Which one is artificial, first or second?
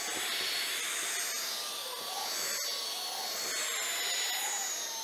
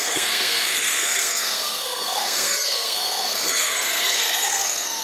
second